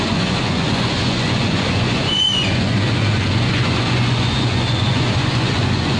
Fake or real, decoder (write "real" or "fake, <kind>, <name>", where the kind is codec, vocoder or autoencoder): fake, vocoder, Vocos